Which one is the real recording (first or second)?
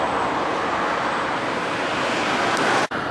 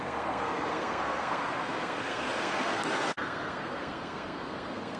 first